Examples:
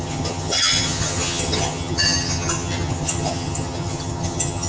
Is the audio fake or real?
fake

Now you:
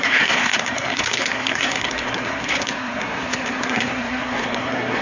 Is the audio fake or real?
fake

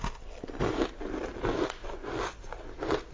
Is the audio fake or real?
real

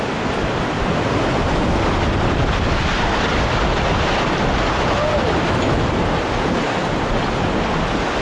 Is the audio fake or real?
real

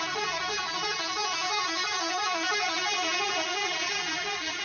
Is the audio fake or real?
fake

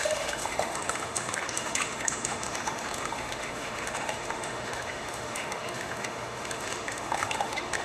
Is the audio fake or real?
fake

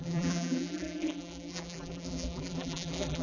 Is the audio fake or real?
fake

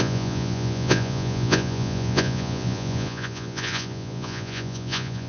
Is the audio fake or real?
fake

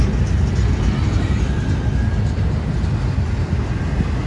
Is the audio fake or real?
real